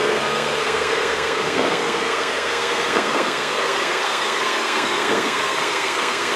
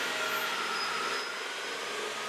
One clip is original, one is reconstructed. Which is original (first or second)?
second